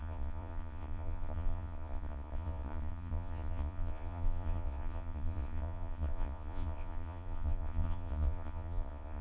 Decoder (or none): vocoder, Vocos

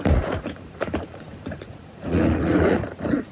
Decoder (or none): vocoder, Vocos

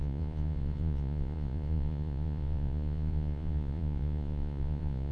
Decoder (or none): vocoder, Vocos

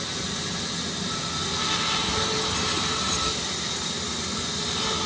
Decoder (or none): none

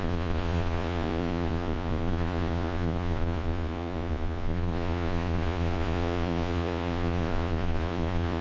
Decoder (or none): vocoder, Vocos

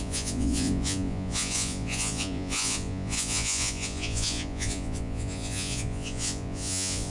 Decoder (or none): vocoder, Vocos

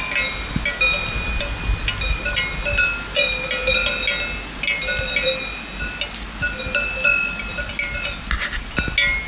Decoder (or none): none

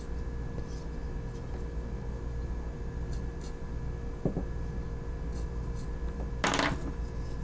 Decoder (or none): none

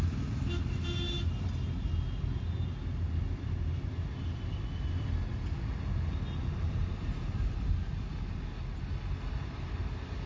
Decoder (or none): none